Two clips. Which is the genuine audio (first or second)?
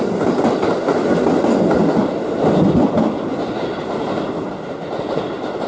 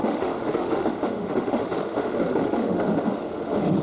first